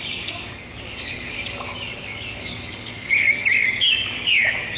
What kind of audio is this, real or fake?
fake